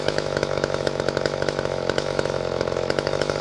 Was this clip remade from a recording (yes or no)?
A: yes